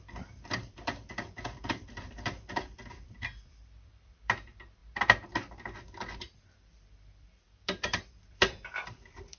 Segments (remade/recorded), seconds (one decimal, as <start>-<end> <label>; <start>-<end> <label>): 0.0-4.8 remade; 4.8-6.2 recorded; 6.2-9.4 remade